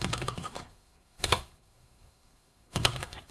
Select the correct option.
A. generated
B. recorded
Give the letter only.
A